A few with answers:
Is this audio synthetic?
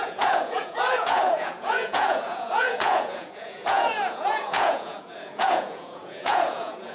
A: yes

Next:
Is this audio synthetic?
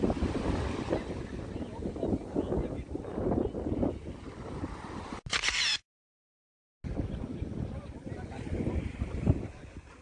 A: no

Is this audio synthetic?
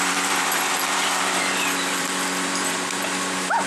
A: yes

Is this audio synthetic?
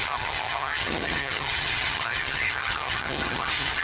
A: yes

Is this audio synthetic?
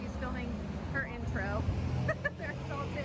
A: no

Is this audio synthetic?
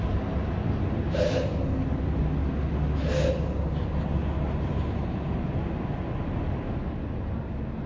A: no